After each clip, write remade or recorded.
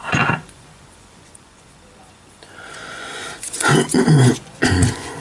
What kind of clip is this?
remade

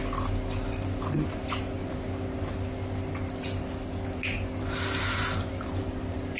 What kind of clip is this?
recorded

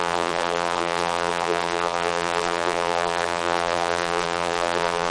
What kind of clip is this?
remade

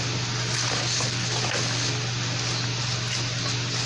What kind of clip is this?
recorded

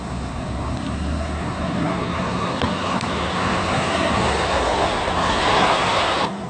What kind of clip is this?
remade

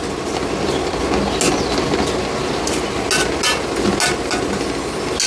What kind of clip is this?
recorded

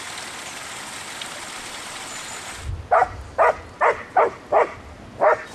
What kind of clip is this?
recorded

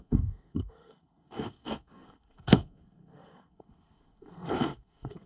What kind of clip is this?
remade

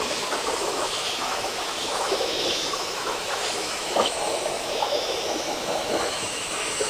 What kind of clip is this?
remade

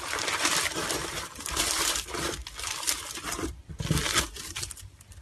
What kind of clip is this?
remade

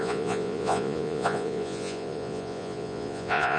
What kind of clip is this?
remade